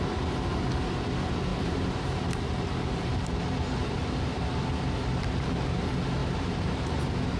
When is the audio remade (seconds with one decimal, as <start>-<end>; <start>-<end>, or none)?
1.5-3.4; 6.2-7.0